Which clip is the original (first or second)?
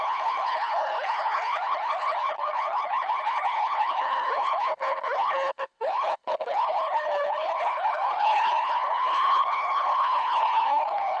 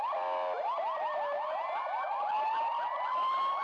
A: second